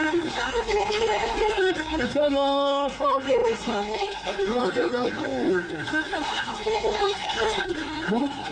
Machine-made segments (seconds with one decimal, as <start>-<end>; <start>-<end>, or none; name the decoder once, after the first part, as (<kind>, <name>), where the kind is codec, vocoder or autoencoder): 0.0-8.5 (codec, SNAC)